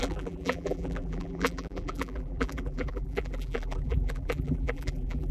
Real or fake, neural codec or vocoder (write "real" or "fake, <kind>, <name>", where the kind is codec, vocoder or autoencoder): fake, vocoder, BigVGAN v2